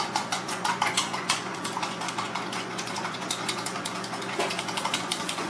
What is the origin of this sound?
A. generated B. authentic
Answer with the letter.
A